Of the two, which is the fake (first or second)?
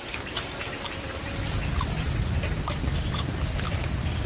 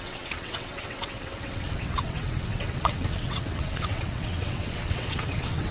second